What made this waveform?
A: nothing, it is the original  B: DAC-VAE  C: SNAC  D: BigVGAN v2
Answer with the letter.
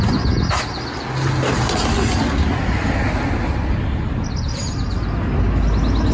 A